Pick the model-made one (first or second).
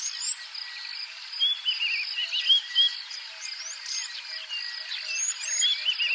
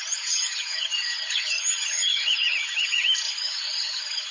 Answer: second